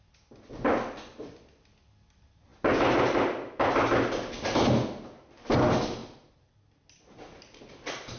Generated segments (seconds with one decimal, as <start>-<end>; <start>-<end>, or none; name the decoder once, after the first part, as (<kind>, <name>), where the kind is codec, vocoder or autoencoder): none